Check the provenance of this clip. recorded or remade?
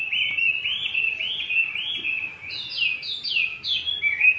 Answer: recorded